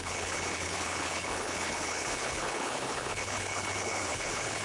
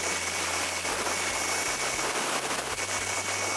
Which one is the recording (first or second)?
second